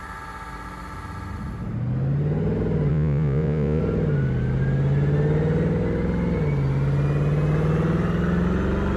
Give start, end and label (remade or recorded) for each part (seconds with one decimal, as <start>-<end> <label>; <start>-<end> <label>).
0.0-2.9 recorded; 2.9-3.8 remade; 3.8-9.0 recorded